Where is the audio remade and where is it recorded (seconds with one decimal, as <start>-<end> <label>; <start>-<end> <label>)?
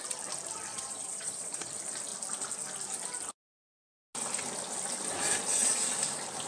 0.0-0.7 recorded; 0.7-1.7 remade; 1.7-6.5 recorded